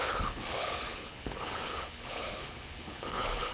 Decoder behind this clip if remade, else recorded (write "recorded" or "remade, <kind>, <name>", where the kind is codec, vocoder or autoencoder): remade, codec, HILCodec